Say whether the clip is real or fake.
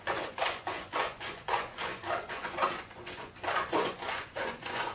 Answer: fake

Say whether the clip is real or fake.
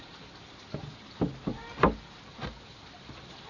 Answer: real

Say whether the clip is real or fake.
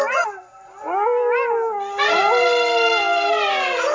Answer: real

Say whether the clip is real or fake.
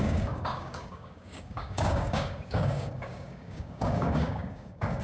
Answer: fake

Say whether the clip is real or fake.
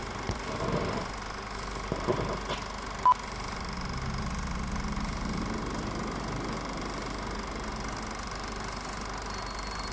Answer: real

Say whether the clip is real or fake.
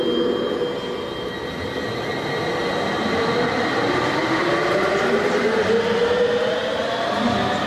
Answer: real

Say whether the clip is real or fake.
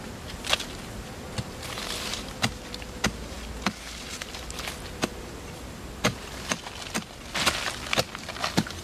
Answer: real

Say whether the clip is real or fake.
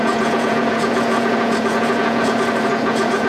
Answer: fake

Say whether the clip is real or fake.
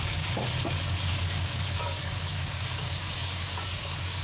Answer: fake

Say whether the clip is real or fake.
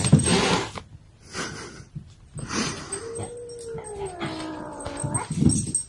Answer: real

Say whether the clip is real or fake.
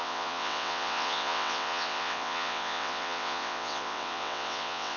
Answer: fake